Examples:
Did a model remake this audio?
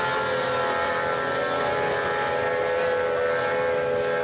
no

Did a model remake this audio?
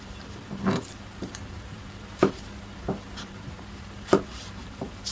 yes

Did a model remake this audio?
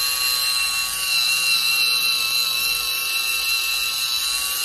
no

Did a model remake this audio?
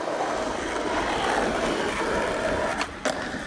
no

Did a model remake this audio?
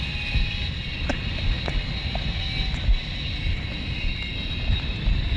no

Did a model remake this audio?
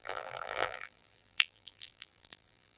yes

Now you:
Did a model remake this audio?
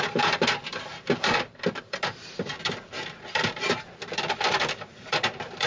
yes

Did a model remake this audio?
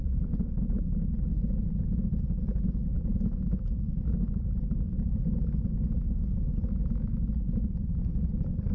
no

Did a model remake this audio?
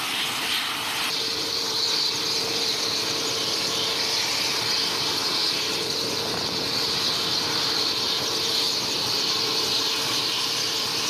no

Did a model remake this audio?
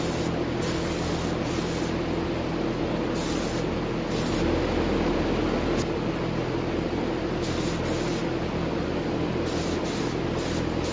no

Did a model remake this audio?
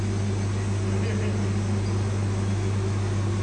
no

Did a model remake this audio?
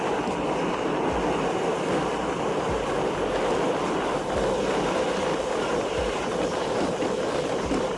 no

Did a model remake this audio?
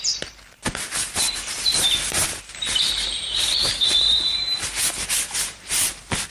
yes